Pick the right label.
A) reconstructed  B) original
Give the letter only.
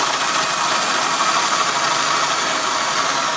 B